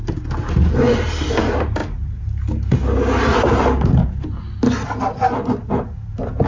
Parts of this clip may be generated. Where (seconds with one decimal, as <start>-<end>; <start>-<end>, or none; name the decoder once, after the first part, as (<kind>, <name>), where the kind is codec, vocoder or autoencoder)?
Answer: none